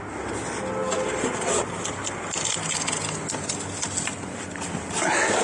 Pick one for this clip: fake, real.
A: real